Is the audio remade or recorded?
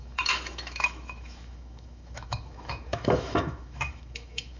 remade